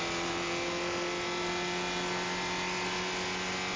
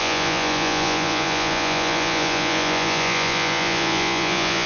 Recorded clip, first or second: first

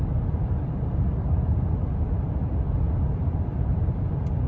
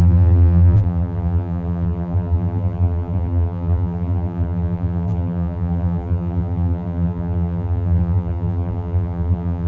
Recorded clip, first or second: first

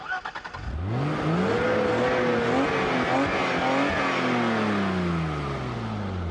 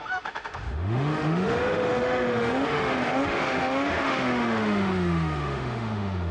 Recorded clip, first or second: first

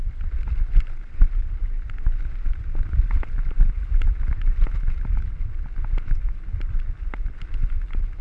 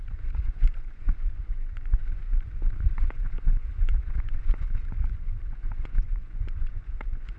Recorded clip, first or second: first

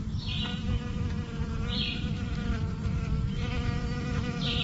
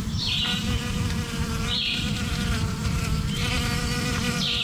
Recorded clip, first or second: first